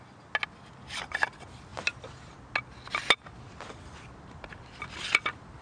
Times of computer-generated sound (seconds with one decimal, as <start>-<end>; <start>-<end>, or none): none